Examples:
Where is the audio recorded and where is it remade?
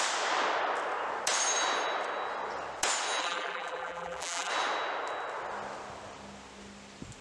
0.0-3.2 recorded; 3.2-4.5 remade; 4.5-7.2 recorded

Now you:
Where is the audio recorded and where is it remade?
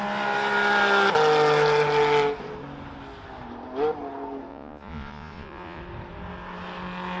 0.0-4.5 recorded; 4.5-5.8 remade; 5.8-7.2 recorded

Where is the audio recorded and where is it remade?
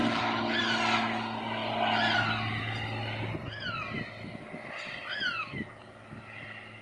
0.0-6.8 recorded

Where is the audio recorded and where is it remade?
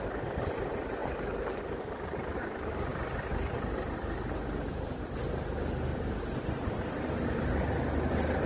0.0-8.5 recorded